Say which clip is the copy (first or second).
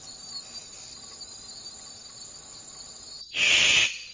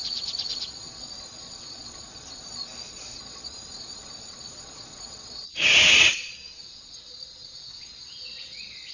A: second